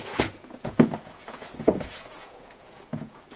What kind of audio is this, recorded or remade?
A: remade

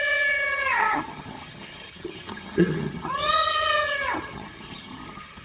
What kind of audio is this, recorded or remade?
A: remade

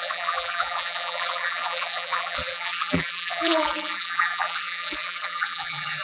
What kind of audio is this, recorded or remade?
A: remade